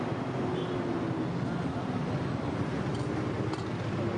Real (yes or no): yes